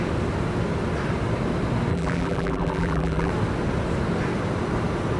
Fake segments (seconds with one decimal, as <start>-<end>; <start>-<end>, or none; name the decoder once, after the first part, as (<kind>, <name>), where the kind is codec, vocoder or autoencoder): 1.9-3.3 (vocoder, BigVGAN v2)